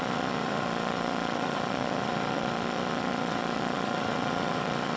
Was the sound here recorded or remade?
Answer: remade